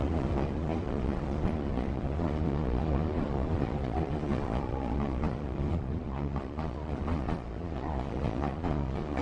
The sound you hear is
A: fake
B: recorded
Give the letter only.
A